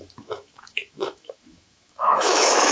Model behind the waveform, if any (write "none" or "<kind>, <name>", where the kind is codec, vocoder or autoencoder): autoencoder, DAC-VAE